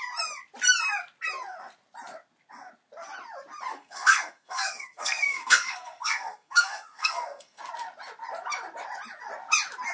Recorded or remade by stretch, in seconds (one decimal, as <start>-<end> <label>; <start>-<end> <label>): 0.0-3.7 recorded; 3.7-7.6 remade; 7.6-9.9 recorded